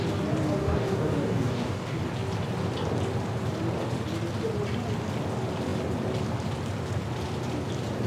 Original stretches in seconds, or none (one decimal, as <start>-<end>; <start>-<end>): 0.0-0.6; 2.0-8.1